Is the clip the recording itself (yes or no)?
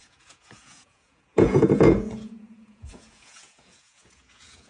no